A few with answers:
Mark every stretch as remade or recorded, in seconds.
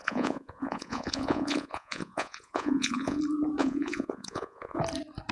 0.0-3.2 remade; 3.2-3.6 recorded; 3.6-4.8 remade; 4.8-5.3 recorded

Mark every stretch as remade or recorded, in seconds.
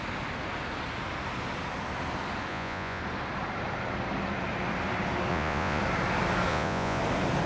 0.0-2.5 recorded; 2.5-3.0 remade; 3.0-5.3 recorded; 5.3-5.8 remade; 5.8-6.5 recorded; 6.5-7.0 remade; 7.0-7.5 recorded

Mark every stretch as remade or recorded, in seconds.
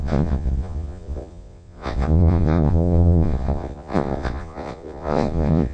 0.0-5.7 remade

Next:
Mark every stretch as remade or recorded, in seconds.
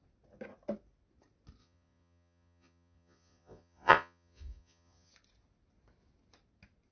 0.0-1.6 recorded; 1.6-5.1 remade; 5.1-6.9 recorded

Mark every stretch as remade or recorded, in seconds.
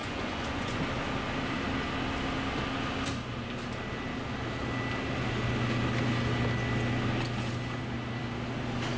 0.0-0.8 remade; 0.8-9.0 recorded